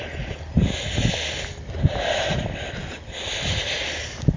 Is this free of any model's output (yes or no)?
yes